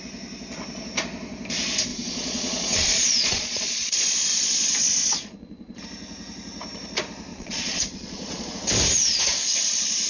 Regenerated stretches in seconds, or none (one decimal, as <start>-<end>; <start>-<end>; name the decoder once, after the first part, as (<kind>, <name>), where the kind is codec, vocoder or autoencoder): 1.9-5.8 (vocoder, Vocos); 7.3-8.5